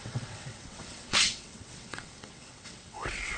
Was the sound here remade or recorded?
remade